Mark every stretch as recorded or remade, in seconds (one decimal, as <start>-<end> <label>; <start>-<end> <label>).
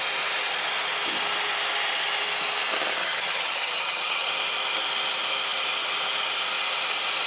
0.0-3.0 recorded; 3.0-4.3 remade; 4.3-7.3 recorded